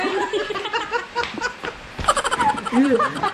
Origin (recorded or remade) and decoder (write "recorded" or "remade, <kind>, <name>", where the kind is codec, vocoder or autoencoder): remade, vocoder, BigVGAN v2